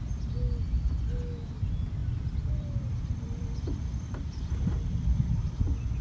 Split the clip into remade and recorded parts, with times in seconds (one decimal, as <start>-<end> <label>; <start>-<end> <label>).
0.0-2.0 recorded; 2.0-5.6 remade; 5.6-6.0 recorded